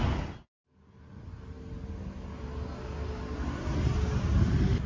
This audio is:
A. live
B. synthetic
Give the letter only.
A